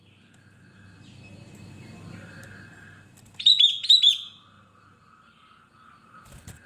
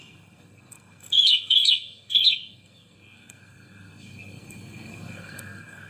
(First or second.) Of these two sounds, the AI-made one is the second